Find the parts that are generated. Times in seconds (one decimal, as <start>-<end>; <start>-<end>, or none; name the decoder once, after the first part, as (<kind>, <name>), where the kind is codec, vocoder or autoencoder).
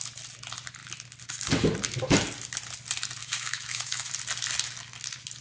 3.2-4.1 (autoencoder, DAC-VAE)